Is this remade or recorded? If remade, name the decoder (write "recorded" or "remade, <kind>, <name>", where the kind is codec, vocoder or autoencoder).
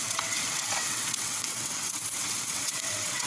remade, vocoder, WaveNeXt